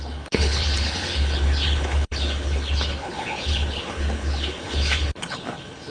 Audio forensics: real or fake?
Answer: fake